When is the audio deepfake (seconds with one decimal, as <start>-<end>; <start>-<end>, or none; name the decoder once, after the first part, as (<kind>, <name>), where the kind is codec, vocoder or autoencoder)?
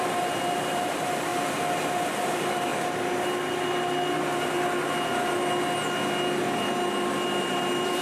0.0-1.3 (vocoder, BigVGAN v2); 1.8-2.7; 7.4-8.0